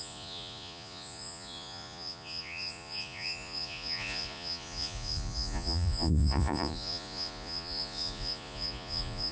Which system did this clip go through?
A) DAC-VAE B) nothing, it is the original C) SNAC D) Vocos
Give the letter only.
D